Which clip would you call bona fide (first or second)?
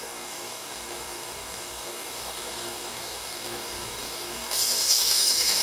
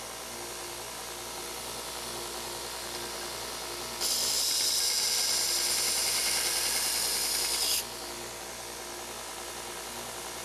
second